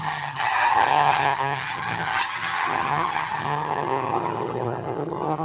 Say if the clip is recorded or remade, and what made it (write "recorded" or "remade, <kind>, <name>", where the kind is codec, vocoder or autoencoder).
remade, vocoder, HiFi-GAN